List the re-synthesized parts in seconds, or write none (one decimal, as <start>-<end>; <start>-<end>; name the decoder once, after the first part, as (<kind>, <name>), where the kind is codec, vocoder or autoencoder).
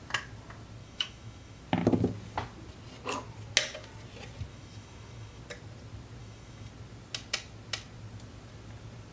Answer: 0.8-1.6 (autoencoder, DAC-VAE); 4.5-5.4; 6.2-6.7